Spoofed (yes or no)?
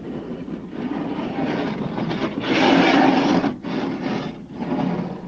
no